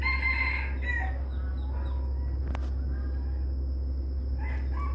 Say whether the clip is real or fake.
real